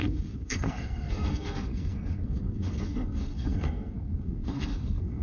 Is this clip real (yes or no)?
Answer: no